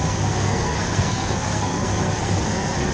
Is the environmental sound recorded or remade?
remade